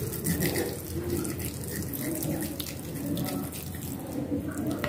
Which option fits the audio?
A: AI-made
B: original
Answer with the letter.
B